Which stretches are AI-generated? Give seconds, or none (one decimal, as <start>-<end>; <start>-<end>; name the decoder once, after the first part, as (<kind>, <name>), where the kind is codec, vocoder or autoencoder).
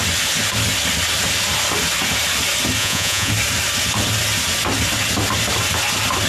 2.8-3.3 (vocoder, Vocos)